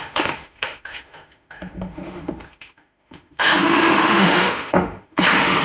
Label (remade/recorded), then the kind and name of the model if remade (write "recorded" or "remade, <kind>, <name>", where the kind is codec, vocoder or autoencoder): remade, autoencoder, DAC-VAE